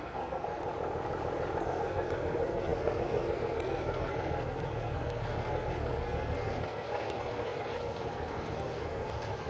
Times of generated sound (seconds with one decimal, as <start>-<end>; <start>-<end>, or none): 0.0-0.6; 1.6-9.5